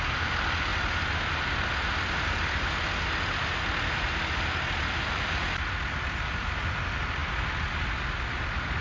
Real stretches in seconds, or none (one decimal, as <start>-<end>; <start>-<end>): 0.0-8.8